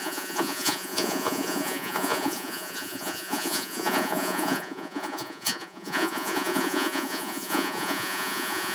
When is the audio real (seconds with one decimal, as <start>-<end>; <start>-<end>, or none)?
none